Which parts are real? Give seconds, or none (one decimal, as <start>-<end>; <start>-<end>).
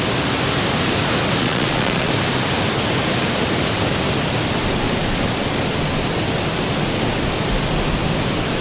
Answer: 0.0-1.4; 2.1-8.6